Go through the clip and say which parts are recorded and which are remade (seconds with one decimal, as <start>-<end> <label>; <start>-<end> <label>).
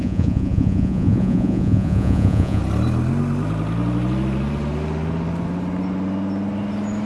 0.0-2.6 remade; 2.6-7.1 recorded